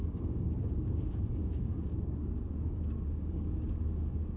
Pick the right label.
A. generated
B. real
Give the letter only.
A